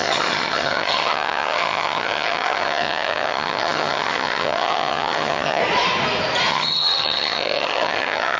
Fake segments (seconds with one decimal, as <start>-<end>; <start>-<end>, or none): 0.0-5.6; 6.5-8.4